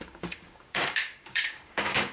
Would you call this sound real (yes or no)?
no